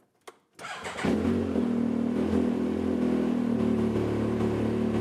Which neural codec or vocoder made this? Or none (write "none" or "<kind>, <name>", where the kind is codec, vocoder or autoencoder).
none